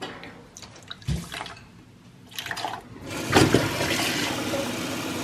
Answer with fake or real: real